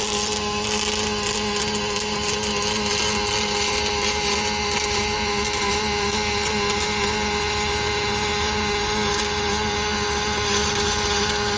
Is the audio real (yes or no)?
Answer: yes